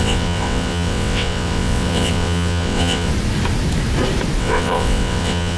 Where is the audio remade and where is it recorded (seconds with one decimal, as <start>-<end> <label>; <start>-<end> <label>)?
0.0-3.1 remade; 3.1-4.4 recorded; 4.4-5.6 remade